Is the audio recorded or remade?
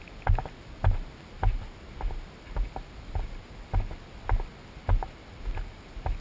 recorded